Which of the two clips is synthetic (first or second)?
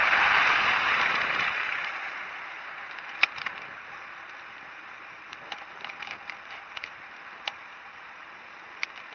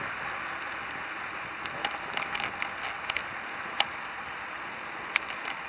first